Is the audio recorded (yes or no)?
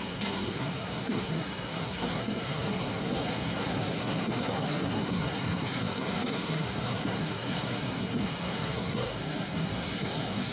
no